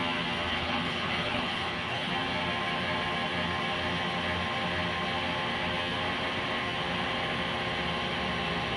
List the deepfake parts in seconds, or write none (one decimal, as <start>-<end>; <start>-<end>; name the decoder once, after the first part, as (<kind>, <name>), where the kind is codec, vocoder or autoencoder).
0.5-2.1 (codec, HILCodec)